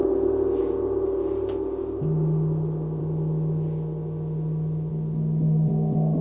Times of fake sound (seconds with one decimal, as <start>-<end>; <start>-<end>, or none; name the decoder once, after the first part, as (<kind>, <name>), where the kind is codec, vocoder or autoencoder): none